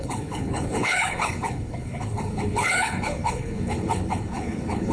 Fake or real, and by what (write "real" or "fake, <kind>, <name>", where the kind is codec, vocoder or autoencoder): fake, codec, HILCodec